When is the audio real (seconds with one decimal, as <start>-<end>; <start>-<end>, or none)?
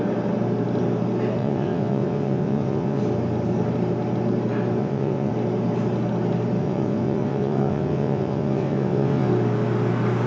0.0-1.4; 3.0-4.8; 5.3-6.6; 9.3-10.3